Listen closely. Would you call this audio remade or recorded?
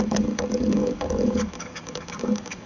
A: remade